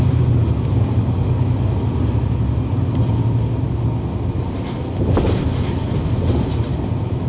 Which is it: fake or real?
real